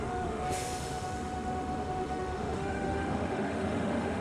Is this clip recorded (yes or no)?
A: no